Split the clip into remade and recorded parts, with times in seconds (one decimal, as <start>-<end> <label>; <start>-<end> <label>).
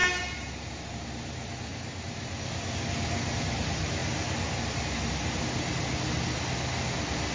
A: 0.0-7.3 recorded